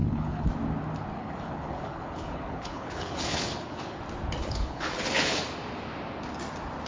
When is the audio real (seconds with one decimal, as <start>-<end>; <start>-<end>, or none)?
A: 0.5-1.1; 4.0-4.4; 5.4-6.9